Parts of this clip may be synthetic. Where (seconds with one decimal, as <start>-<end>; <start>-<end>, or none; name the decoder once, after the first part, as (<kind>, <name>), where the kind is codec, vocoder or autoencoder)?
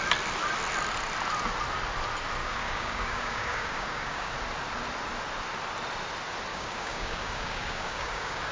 2.4-4.3 (codec, DAC); 6.5-8.5